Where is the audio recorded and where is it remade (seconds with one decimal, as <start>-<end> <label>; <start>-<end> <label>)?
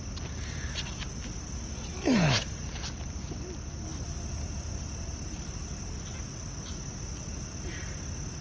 0.0-8.4 recorded